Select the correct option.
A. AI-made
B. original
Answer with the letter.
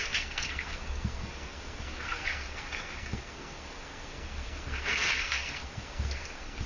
A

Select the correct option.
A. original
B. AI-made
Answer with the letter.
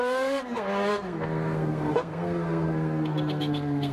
B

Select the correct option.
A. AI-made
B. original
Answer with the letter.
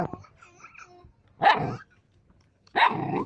B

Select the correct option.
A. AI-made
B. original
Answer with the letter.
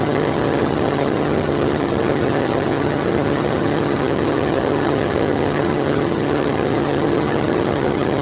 A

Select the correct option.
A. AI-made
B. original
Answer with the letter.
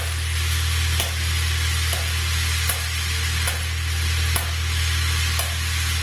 B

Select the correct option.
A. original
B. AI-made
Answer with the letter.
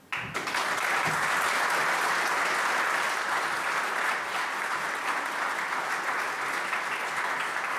A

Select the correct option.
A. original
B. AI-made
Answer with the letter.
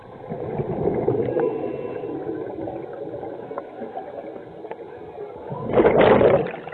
A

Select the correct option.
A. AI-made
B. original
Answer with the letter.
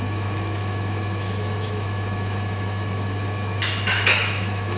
A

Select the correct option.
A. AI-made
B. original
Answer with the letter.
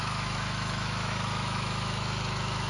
A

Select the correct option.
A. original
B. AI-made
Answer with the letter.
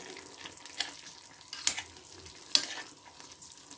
A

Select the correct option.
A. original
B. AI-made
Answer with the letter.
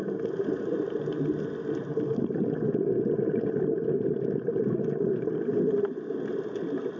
A